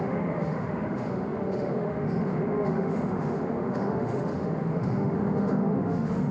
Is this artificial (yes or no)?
yes